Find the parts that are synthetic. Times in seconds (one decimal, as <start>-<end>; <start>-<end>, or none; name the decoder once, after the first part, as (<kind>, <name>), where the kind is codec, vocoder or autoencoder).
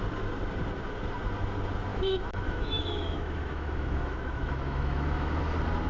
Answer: 1.9-5.4 (autoencoder, DAC-VAE)